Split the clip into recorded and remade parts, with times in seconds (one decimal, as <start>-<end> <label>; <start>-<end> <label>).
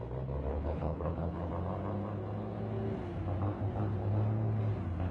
0.0-0.5 recorded; 0.5-1.5 remade; 1.5-5.1 recorded